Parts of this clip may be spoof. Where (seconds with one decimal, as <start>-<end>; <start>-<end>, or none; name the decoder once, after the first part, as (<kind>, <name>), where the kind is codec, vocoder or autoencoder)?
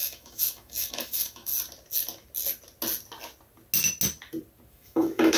0.0-1.5 (autoencoder, DAC-VAE); 4.7-5.4